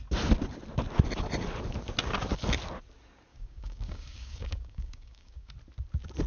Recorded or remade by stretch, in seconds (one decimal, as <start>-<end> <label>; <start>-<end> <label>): 0.0-3.3 recorded; 3.3-5.5 remade; 5.5-6.3 recorded